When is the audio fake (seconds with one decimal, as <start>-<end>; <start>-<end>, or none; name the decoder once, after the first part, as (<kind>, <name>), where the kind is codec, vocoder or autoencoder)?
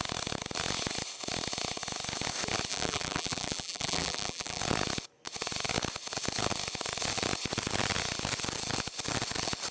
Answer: 2.7-4.6 (vocoder, BigVGAN v2)